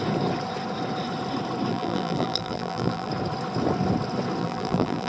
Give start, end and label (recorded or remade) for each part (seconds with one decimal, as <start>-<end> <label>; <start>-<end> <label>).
0.0-1.7 recorded; 1.7-3.1 remade; 3.1-4.4 recorded; 4.4-5.1 remade